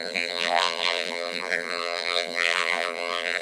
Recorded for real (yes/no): no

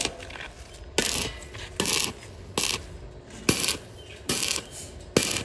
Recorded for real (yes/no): yes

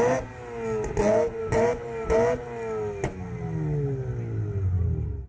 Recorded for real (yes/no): yes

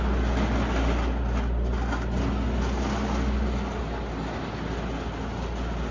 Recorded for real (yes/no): yes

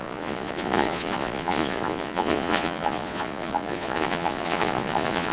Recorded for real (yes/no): no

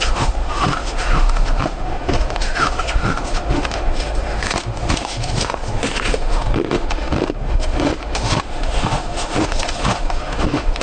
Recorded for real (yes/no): no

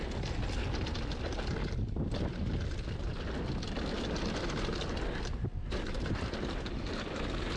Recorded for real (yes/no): yes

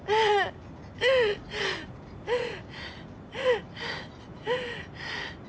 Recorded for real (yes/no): yes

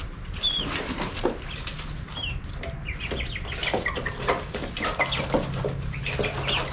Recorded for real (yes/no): yes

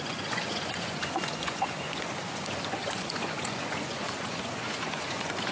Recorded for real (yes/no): no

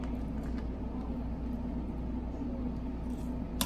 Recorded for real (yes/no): yes